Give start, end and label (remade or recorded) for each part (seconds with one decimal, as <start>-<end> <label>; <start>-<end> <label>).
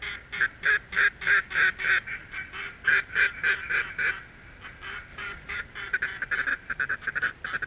0.0-5.1 recorded; 5.1-5.6 remade; 5.6-6.5 recorded; 6.5-7.3 remade; 7.3-7.7 recorded